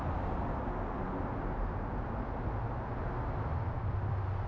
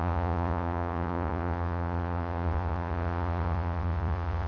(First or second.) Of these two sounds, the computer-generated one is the second